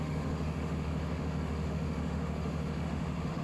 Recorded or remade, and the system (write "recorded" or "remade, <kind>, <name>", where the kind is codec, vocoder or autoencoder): remade, autoencoder, DAC-VAE